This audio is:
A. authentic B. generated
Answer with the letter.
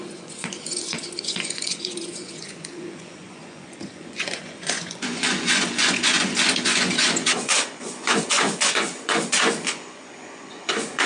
B